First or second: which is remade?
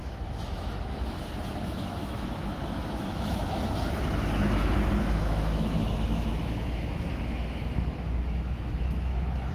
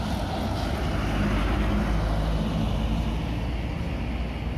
first